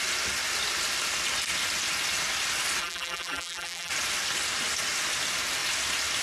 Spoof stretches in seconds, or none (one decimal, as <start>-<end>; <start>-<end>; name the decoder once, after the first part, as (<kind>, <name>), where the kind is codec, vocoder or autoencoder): 2.8-3.9 (vocoder, BigVGAN v2)